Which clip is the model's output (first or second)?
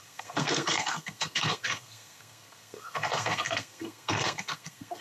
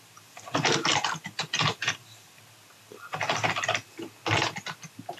first